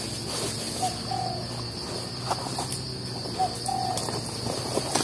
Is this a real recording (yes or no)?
yes